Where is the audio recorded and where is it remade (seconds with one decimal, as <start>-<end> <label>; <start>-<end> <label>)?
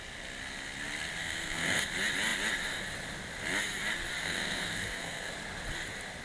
0.0-1.2 recorded; 1.2-1.8 remade; 1.8-4.2 recorded; 4.2-5.3 remade; 5.3-6.2 recorded